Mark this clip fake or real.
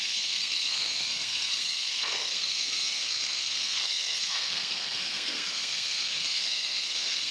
fake